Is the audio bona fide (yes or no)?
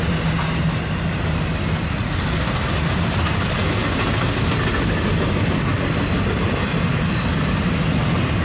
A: yes